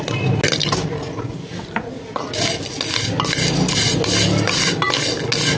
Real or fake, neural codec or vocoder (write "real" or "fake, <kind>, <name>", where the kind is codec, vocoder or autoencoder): real